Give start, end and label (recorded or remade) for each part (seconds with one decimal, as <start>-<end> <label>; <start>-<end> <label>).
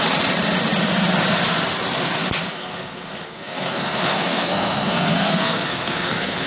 0.0-2.5 recorded; 2.5-6.5 remade